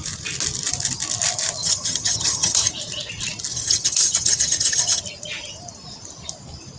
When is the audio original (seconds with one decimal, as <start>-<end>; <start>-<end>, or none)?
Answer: 0.0-1.6; 2.7-3.5; 5.0-6.8